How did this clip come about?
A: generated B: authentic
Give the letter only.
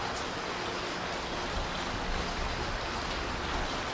B